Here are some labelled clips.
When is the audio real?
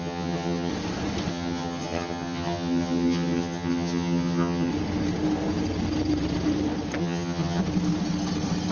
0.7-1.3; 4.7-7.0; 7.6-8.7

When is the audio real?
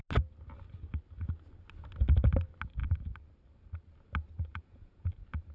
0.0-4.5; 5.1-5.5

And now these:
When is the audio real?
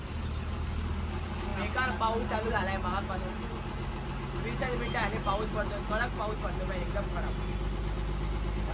0.0-8.7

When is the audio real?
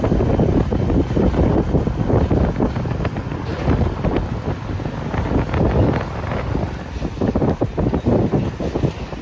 0.0-3.5; 4.1-9.2